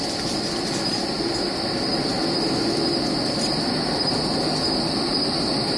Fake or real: real